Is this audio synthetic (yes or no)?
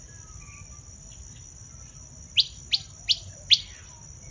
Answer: no